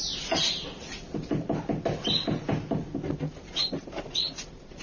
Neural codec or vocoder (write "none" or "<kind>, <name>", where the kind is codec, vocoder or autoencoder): none